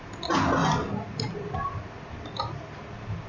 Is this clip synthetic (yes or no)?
no